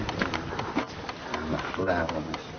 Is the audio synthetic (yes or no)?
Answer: no